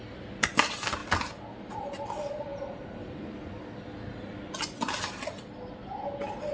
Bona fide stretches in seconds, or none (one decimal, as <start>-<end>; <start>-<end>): 0.0-6.5